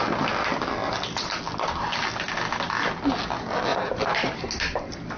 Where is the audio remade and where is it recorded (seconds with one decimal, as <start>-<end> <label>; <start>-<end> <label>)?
0.0-0.5 recorded; 0.5-1.3 remade; 1.3-5.2 recorded